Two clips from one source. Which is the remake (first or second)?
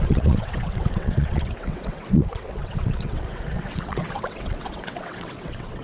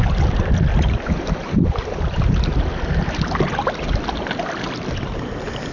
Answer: first